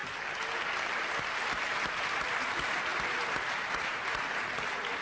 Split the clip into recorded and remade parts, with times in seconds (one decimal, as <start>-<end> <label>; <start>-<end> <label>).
0.0-2.9 recorded; 2.9-4.5 remade; 4.5-5.0 recorded